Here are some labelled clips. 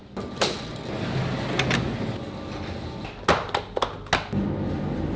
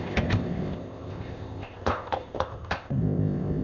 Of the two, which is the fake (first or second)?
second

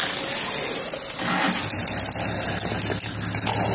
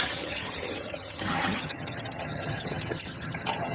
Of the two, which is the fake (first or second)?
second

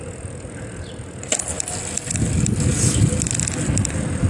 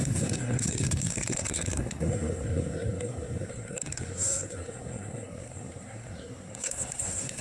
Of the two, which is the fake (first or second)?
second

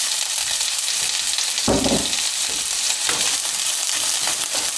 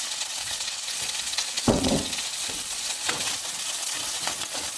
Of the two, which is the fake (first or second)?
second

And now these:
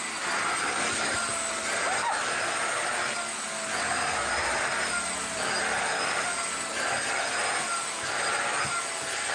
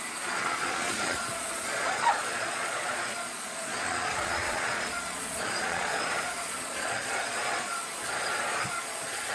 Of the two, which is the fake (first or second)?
second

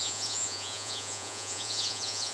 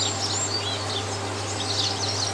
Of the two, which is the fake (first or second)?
first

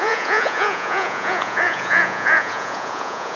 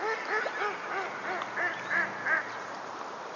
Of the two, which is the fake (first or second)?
first